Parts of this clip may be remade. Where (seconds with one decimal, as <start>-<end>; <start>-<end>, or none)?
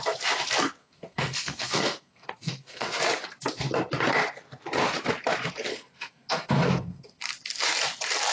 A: 0.8-3.0; 5.7-7.2